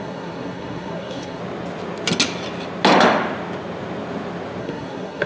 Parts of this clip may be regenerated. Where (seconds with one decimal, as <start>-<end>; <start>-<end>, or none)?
0.0-1.4; 4.6-5.3